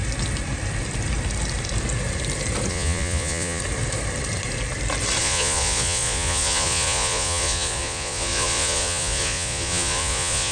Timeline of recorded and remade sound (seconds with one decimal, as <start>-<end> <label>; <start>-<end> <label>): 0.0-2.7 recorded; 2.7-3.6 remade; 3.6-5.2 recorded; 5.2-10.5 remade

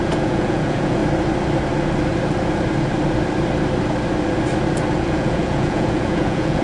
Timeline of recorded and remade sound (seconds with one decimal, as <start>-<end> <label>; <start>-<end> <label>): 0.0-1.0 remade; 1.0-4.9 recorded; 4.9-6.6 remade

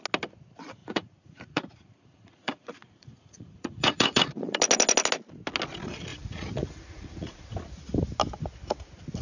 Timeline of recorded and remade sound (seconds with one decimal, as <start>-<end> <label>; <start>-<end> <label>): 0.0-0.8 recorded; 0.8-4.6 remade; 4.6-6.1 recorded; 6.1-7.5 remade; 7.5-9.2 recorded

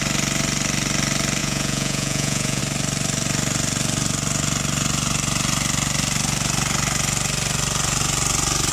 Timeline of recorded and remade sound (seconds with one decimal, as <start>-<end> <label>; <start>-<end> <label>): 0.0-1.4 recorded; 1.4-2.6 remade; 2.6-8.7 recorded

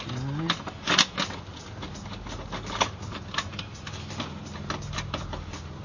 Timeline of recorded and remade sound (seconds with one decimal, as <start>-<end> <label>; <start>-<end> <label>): 0.0-5.8 recorded

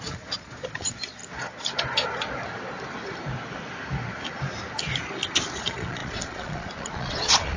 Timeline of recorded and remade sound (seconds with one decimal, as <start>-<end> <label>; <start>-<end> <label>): 0.0-1.2 remade; 1.2-5.5 recorded; 5.5-7.6 remade

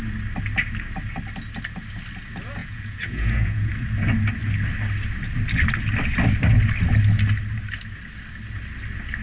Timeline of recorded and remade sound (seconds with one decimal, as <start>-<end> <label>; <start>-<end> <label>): 0.0-2.6 recorded; 2.6-3.7 remade; 3.7-9.2 recorded